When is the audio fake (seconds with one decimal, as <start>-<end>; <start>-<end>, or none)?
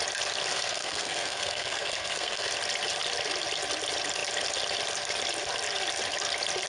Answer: 0.5-2.5